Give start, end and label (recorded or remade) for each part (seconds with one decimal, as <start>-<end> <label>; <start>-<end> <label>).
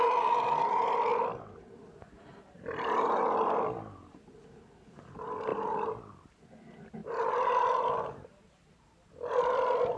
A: 0.0-7.0 recorded; 7.0-8.6 remade; 8.6-10.0 recorded